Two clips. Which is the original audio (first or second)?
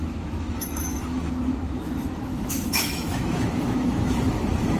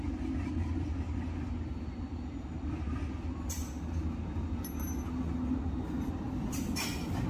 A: second